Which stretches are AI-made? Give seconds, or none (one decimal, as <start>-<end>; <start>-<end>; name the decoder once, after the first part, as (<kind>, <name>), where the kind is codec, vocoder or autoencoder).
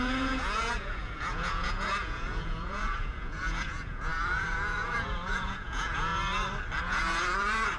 0.0-6.1 (vocoder, Vocos); 6.8-7.8